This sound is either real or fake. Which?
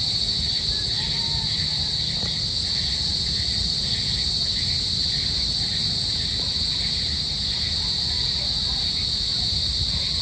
real